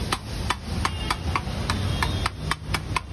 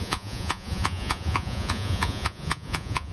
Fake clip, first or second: second